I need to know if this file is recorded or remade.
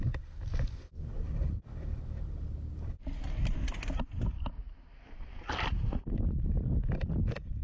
recorded